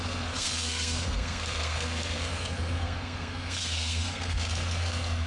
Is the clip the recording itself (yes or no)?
no